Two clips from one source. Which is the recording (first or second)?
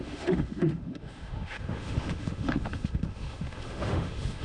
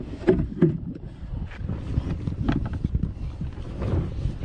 second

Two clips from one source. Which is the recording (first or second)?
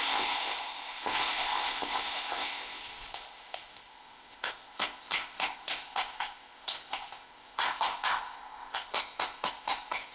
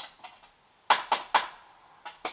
second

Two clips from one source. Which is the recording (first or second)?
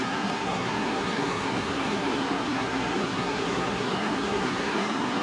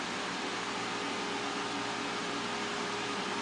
second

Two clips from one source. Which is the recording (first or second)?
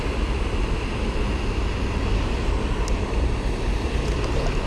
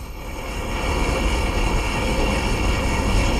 first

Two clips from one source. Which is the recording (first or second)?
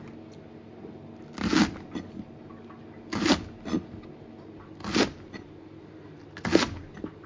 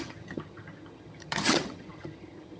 first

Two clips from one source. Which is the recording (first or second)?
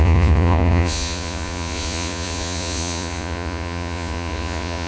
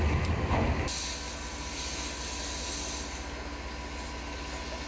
second